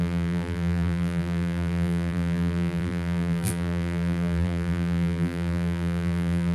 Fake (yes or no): yes